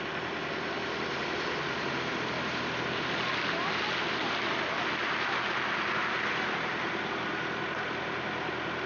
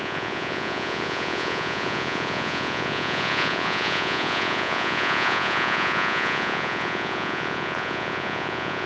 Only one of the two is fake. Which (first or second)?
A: second